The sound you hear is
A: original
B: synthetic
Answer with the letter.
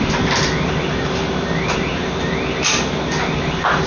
A